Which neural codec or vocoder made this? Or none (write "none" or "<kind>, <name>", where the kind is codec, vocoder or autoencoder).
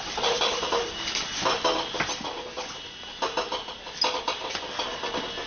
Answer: none